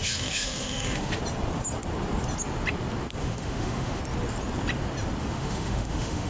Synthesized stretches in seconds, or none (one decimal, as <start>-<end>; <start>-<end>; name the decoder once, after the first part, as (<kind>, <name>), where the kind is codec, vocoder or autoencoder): 0.0-1.2 (autoencoder, DAC-VAE); 3.2-4.0; 5.2-6.3